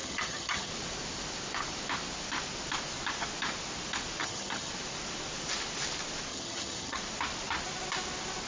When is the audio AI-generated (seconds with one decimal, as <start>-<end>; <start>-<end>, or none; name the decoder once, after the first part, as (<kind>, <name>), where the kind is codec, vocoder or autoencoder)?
0.0-0.7 (vocoder, HiFi-GAN); 4.2-4.7; 6.3-7.0